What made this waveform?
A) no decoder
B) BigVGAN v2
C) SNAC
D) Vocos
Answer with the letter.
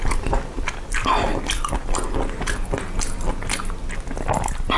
A